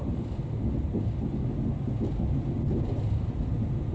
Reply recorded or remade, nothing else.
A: recorded